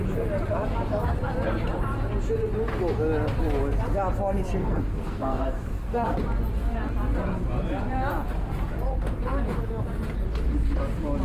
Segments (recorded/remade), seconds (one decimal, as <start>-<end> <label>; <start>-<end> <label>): 0.0-4.6 recorded; 4.6-6.2 remade; 6.2-11.2 recorded

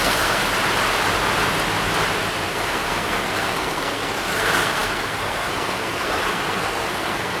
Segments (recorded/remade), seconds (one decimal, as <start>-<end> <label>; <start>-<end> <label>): 0.0-0.4 remade; 0.4-2.5 recorded; 2.5-7.4 remade

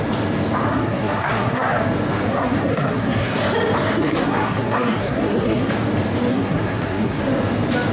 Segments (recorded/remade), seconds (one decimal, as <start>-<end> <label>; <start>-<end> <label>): 0.0-0.7 recorded; 0.7-1.8 remade; 1.8-2.3 recorded; 2.3-3.4 remade; 3.4-4.0 recorded; 4.0-5.7 remade; 5.7-6.3 recorded; 6.3-7.2 remade; 7.2-7.9 recorded

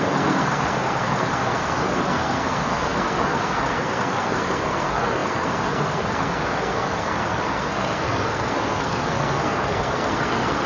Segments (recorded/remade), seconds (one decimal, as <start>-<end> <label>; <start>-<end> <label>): 0.0-10.7 remade

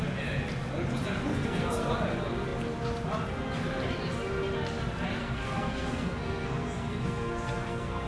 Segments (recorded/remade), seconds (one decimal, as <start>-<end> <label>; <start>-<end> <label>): 0.0-1.3 recorded; 1.3-1.9 remade; 1.9-5.2 recorded; 5.2-8.1 remade

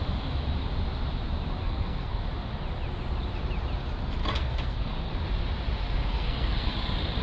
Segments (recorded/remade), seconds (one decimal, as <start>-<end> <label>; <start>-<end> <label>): 0.0-1.6 recorded; 1.6-2.2 remade; 2.2-4.2 recorded; 4.2-5.1 remade; 5.1-6.1 recorded; 6.1-6.8 remade; 6.8-7.2 recorded